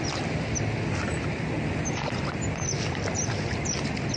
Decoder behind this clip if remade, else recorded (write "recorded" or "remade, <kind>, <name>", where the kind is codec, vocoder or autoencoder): recorded